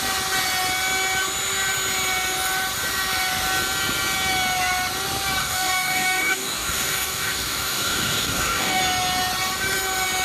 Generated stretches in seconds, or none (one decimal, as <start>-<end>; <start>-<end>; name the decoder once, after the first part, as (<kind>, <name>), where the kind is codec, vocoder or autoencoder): 5.4-8.8 (codec, DAC)